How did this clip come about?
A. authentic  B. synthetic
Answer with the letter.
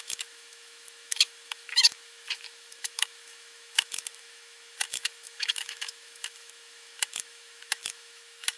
B